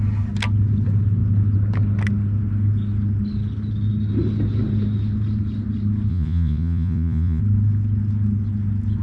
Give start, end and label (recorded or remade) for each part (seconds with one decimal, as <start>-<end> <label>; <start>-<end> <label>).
0.0-6.1 recorded; 6.1-7.4 remade; 7.4-9.0 recorded